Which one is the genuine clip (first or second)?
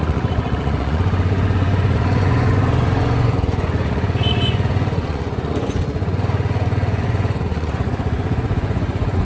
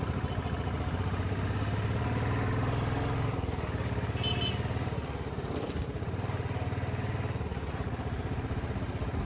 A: second